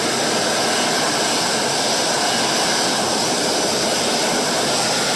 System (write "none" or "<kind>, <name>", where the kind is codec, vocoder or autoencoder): none